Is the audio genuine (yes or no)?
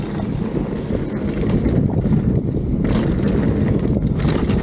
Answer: yes